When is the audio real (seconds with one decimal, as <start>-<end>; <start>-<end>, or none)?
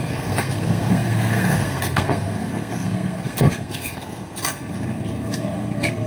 none